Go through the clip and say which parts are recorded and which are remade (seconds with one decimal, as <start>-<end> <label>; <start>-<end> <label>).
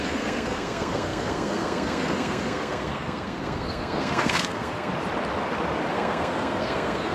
0.0-4.9 remade; 4.9-5.9 recorded; 5.9-7.1 remade